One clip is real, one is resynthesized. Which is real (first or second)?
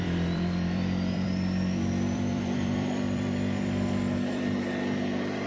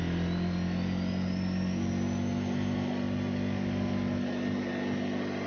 second